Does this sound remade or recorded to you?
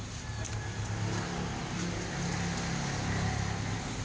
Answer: recorded